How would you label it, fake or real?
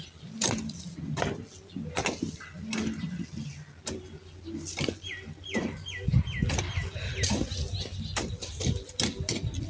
real